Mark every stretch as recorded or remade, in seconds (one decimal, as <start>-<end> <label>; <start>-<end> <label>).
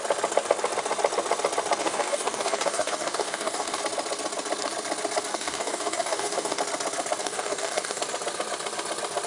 0.0-1.8 recorded; 1.8-3.8 remade; 3.8-5.3 recorded; 5.3-6.6 remade; 6.6-7.2 recorded; 7.2-8.0 remade; 8.0-9.3 recorded